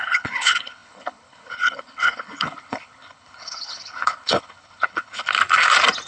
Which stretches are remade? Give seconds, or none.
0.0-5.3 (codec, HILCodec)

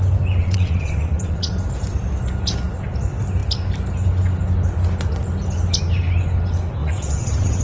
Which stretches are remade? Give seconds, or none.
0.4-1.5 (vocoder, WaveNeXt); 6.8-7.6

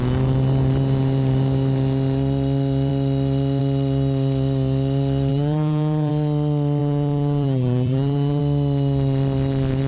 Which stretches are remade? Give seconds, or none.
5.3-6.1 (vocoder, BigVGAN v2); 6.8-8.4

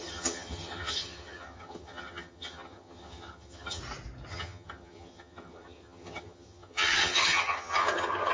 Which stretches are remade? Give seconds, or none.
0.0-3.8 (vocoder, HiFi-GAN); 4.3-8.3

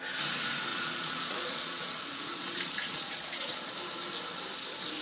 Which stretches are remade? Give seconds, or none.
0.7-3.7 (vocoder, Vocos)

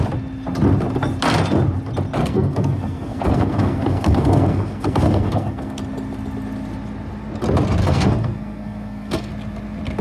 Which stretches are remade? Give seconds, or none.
2.2-5.8 (codec, SNAC); 7.8-9.3